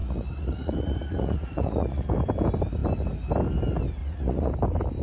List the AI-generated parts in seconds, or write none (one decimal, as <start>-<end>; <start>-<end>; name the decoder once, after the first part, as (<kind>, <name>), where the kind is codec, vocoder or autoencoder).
0.0-2.1 (vocoder, Vocos); 4.0-4.5